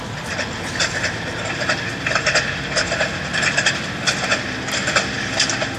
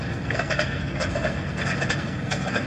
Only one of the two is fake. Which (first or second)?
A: second